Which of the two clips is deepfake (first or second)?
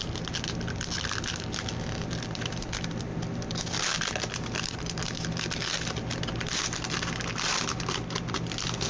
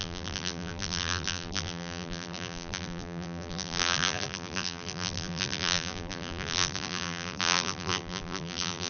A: second